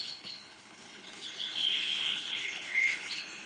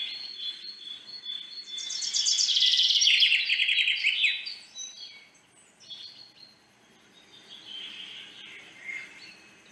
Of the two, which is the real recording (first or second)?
second